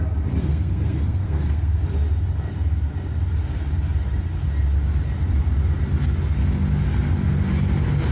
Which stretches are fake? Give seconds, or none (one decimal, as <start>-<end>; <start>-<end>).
0.4-1.8